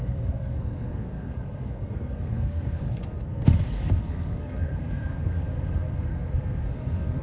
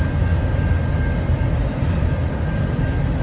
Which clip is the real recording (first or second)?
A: second